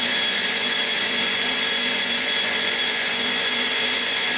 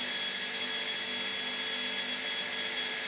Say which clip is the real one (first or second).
second